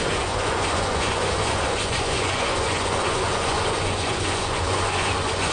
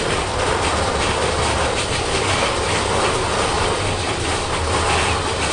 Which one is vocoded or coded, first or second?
first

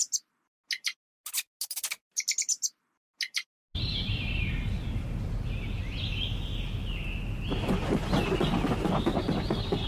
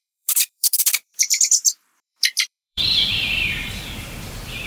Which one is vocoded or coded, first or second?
second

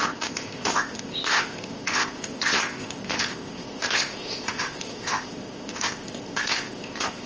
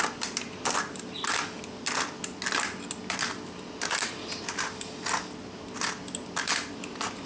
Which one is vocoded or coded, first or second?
first